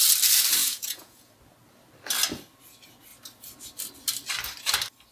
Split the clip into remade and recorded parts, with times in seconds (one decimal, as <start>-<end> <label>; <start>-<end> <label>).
0.0-0.6 recorded; 0.6-1.3 remade; 1.3-5.1 recorded